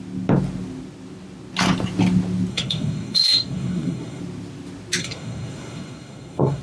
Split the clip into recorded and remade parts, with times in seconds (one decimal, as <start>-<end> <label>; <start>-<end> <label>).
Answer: 0.0-2.5 recorded; 2.5-4.2 remade; 4.2-5.0 recorded; 5.0-6.6 remade